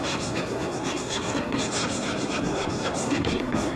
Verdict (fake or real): fake